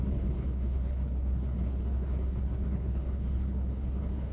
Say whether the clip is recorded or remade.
remade